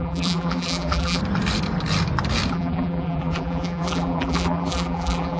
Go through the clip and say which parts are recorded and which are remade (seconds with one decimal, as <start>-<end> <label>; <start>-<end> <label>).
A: 0.0-1.2 remade; 1.2-2.5 recorded; 2.5-5.4 remade